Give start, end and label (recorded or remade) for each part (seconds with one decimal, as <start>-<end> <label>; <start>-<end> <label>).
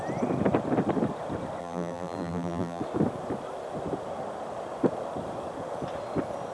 0.0-1.6 recorded; 1.6-2.8 remade; 2.8-6.5 recorded